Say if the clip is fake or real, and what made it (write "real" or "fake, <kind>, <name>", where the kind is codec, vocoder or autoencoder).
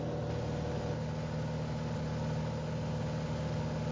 real